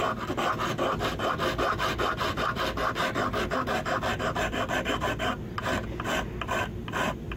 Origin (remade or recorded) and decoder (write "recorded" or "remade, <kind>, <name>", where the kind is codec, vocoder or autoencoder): recorded